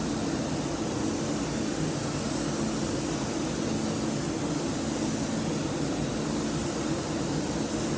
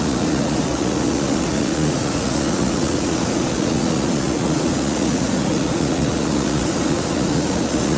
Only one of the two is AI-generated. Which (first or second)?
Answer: second